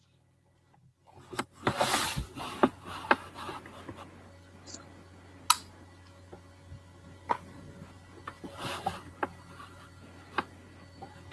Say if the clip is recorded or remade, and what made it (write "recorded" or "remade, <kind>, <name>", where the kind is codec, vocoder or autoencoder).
recorded